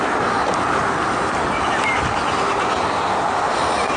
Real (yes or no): yes